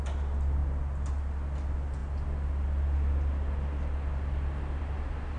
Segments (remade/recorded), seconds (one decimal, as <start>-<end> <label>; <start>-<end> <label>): 0.0-5.4 recorded